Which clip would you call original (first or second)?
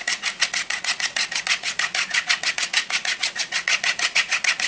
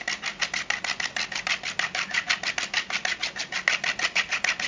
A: second